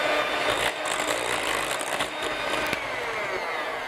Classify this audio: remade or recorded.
recorded